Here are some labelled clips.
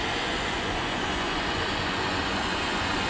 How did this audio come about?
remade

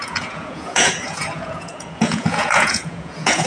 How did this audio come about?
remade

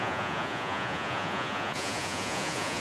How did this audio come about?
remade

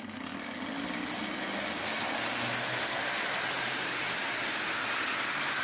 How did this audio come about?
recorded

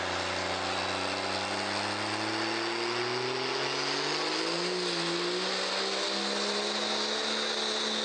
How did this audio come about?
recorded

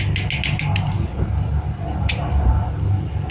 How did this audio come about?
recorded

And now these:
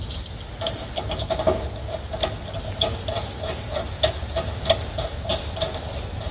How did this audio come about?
recorded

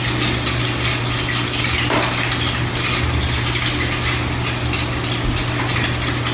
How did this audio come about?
recorded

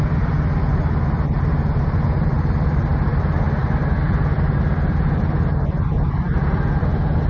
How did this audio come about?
recorded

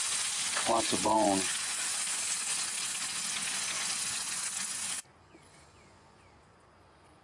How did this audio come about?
remade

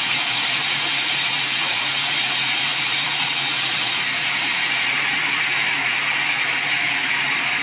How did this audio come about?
remade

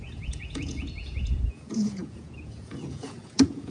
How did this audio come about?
remade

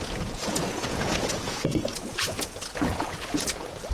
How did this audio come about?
remade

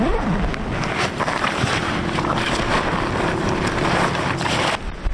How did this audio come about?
recorded